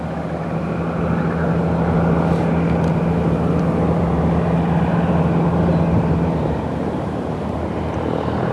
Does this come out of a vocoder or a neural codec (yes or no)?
no